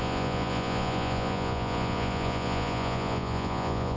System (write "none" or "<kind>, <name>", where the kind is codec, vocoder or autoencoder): vocoder, Vocos